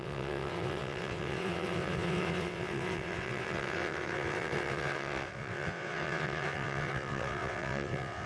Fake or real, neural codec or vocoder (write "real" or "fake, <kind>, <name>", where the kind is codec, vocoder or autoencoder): fake, vocoder, WaveNeXt